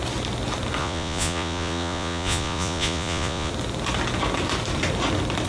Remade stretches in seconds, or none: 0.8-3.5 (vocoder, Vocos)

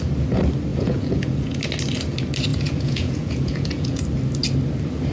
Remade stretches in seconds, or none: 0.7-1.6 (vocoder, Vocos); 2.5-4.0

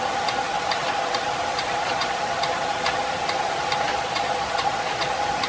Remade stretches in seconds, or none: 1.5-2.2 (vocoder, Vocos); 3.9-5.1

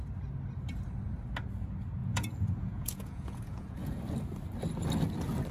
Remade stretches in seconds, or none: 2.0-4.0 (vocoder, Vocos)

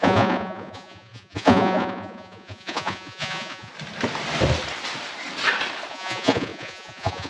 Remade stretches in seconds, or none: 0.0-3.7 (vocoder, Vocos); 5.9-7.3

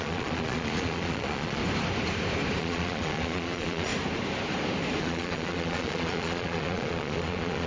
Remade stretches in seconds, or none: 0.0-1.6 (vocoder, Vocos); 2.6-3.9; 5.0-7.7

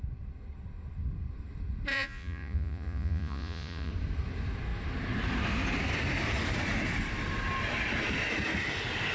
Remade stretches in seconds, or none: 1.9-3.9 (vocoder, Vocos)